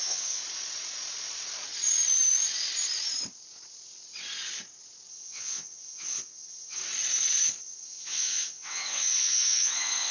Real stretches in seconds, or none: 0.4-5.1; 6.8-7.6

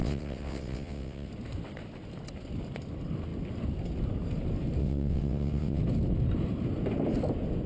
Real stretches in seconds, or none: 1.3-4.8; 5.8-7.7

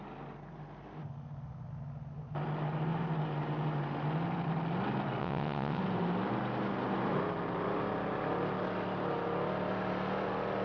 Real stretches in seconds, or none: 0.0-5.2; 5.8-10.6